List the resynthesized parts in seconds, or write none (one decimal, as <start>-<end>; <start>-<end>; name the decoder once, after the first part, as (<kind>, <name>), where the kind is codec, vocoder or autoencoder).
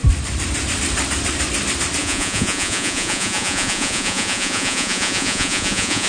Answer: 2.0-6.1 (vocoder, Vocos)